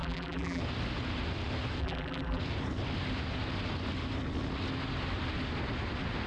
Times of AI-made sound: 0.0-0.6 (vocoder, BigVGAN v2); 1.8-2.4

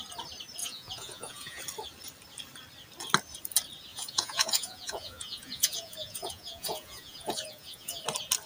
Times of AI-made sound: 0.6-1.6 (vocoder, Vocos); 3.9-8.0

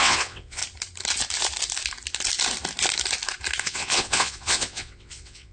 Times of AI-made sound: 0.0-0.6 (vocoder, WaveNeXt); 3.6-5.5

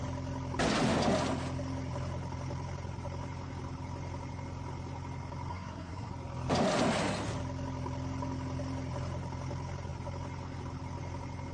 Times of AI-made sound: 5.5-6.1 (codec, SNAC)